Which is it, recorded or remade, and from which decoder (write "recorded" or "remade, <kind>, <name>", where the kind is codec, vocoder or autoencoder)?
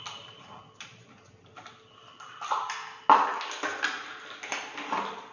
recorded